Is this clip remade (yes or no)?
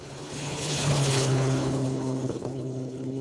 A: yes